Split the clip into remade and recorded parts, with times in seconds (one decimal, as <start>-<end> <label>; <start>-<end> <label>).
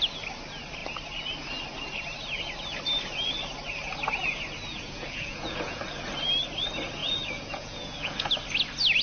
0.0-4.7 recorded; 4.7-5.8 remade; 5.8-7.0 recorded; 7.0-8.3 remade; 8.3-9.0 recorded